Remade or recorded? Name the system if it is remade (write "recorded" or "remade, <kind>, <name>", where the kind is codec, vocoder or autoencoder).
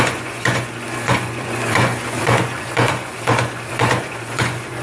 remade, vocoder, Vocos